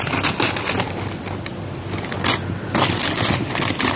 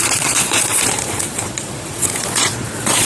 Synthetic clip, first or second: second